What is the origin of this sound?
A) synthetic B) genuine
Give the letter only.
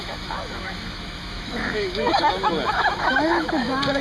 A